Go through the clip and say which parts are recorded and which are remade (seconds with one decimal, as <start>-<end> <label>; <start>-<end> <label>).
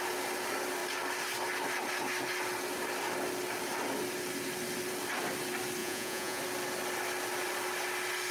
0.0-5.8 recorded; 5.8-6.4 remade; 6.4-8.3 recorded